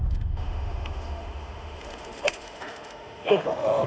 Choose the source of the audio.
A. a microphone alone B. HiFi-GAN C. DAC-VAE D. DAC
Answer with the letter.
C